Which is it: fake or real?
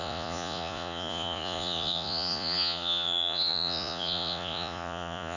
fake